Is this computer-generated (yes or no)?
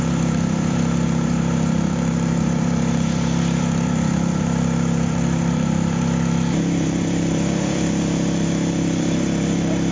yes